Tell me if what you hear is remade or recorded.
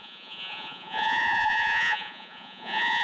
remade